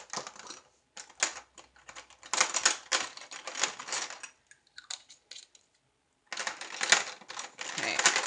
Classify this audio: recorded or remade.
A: recorded